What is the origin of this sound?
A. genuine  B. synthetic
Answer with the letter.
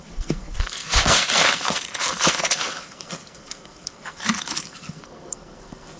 B